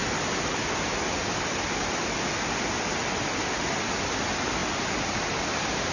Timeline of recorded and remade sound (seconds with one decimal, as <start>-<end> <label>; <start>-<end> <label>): 0.0-5.9 recorded